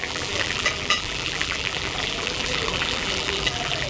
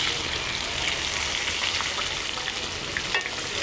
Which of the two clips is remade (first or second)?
first